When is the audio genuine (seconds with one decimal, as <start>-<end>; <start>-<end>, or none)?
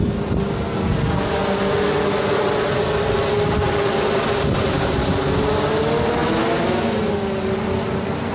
0.0-8.3